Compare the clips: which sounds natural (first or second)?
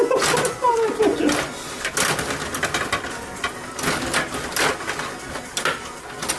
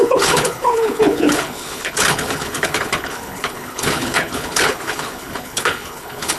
first